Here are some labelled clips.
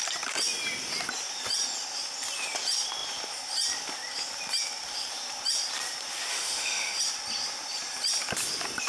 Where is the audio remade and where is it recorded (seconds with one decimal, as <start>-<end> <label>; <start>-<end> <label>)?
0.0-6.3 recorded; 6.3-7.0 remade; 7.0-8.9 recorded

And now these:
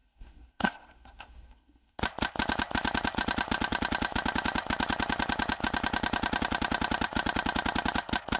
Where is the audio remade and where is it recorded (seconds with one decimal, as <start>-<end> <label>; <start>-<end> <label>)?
0.0-2.0 remade; 2.0-8.4 recorded

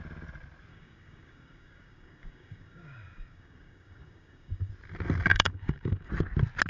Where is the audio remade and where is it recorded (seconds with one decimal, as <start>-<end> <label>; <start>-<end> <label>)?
0.0-0.7 recorded; 0.7-4.7 remade; 4.7-5.3 recorded; 5.3-6.1 remade; 6.1-6.7 recorded